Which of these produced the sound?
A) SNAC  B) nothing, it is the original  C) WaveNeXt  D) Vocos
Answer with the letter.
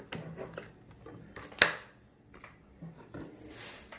B